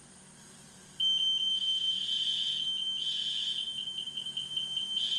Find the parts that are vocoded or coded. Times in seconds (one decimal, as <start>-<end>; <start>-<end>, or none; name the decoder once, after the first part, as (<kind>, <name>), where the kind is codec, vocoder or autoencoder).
1.5-2.1 (autoencoder, DAC-VAE)